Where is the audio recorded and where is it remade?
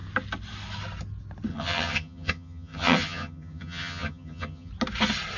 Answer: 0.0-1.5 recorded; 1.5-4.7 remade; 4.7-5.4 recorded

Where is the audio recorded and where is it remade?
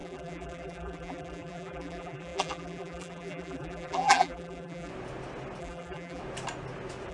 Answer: 0.0-4.9 remade; 4.9-5.6 recorded; 5.6-6.2 remade; 6.2-7.1 recorded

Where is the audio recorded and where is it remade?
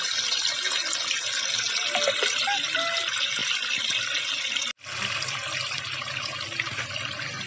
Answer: 0.0-7.5 recorded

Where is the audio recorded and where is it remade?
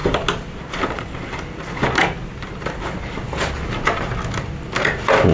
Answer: 0.0-5.3 recorded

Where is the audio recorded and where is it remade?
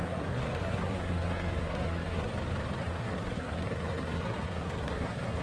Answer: 0.0-2.3 remade; 2.3-2.8 recorded; 2.8-5.4 remade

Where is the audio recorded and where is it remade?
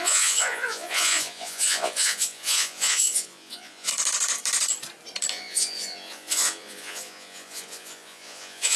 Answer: 0.0-3.9 remade; 3.9-5.3 recorded; 5.3-8.8 remade